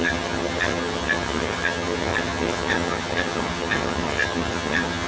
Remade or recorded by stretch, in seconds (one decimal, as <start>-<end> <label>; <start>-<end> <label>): 0.0-5.1 remade